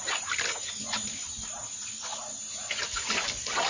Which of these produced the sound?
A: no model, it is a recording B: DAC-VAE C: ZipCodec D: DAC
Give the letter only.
A